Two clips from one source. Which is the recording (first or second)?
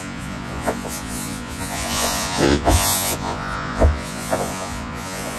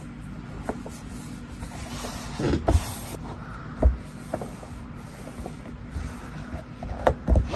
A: second